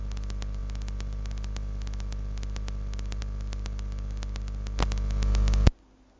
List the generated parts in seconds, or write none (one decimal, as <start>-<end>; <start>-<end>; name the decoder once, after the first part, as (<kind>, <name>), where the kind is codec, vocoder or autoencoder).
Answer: none